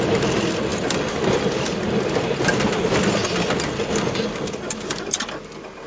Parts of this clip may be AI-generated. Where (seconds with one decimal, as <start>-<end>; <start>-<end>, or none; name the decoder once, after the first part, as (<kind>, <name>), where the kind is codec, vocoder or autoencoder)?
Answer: none